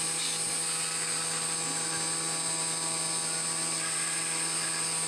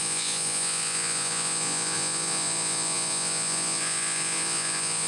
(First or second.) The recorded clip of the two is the first